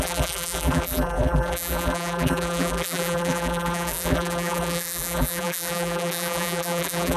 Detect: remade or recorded remade